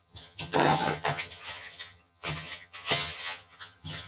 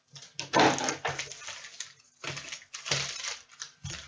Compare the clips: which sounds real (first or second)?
second